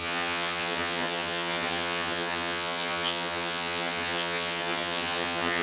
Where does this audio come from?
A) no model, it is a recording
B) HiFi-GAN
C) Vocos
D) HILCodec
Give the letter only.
B